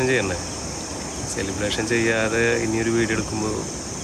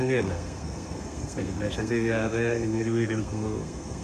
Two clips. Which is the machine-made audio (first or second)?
second